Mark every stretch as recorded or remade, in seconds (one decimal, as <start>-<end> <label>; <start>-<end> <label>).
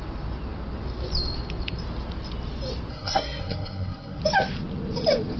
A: 0.0-2.9 recorded; 2.9-4.2 remade; 4.2-5.4 recorded